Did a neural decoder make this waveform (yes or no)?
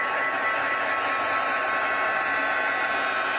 no